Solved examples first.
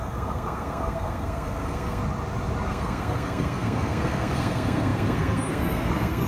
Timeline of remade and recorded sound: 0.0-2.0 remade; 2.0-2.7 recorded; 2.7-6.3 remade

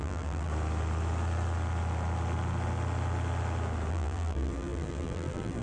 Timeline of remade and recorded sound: 0.0-0.5 remade; 0.5-3.9 recorded; 3.9-5.6 remade

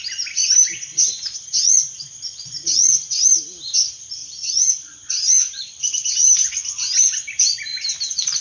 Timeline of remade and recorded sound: 0.0-0.7 recorded; 0.7-3.1 remade; 3.1-4.2 recorded; 4.2-5.7 remade; 5.7-8.4 recorded

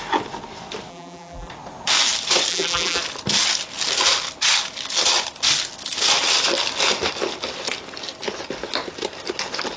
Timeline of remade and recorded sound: 0.0-0.9 recorded; 0.9-1.5 remade; 1.5-2.5 recorded; 2.5-3.0 remade; 3.0-9.8 recorded